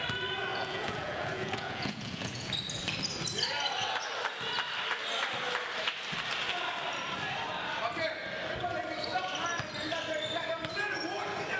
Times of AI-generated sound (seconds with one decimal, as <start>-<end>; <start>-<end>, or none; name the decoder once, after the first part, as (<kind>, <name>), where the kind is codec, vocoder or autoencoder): 0.5-2.5 (vocoder, Vocos)